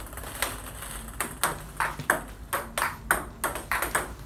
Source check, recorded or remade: recorded